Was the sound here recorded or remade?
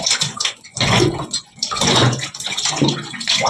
remade